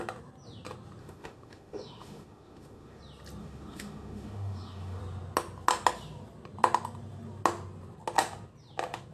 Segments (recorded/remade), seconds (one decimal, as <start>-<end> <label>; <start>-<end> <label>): 0.0-1.0 recorded; 1.0-3.0 remade; 3.0-3.4 recorded; 3.4-5.0 remade; 5.0-9.1 recorded